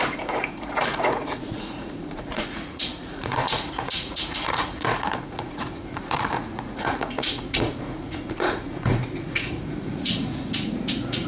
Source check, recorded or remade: remade